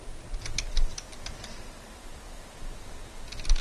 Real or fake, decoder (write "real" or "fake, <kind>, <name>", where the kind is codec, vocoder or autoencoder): real